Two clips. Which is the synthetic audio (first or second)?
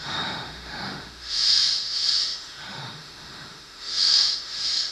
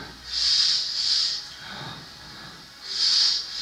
first